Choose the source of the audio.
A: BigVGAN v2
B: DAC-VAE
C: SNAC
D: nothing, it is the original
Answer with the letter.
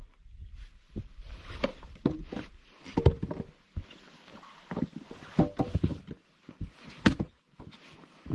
D